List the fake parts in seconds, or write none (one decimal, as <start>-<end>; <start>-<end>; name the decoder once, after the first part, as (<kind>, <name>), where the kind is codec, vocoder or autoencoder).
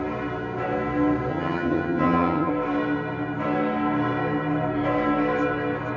1.3-2.5 (vocoder, HiFi-GAN)